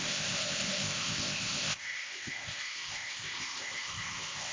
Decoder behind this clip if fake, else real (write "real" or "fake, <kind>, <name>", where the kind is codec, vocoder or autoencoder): fake, codec, ZipCodec